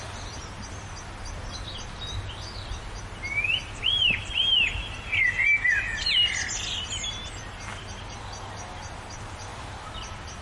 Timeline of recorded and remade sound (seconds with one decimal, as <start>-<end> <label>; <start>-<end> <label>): 0.0-10.4 recorded